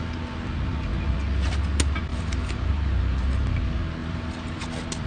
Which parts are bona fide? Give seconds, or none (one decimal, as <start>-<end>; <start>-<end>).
0.0-2.1; 3.3-4.0; 4.6-5.1